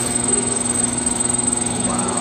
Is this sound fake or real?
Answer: fake